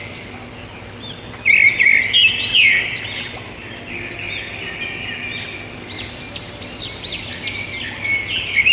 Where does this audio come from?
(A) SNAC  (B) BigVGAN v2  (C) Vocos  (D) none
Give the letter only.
D